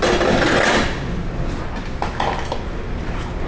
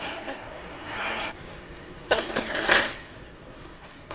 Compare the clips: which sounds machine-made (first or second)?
second